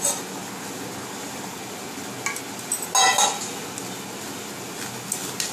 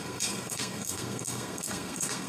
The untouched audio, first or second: first